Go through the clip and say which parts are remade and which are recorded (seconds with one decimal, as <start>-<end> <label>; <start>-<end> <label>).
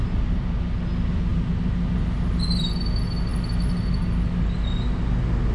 0.0-5.5 recorded